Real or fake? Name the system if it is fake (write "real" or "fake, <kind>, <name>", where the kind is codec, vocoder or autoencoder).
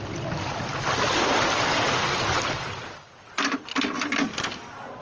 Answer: real